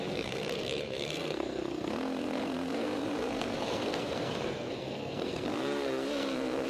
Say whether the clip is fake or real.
fake